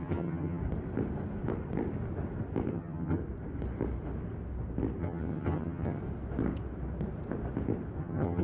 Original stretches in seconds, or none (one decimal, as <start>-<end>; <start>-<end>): 0.6-2.7; 3.2-5.0; 6.0-8.0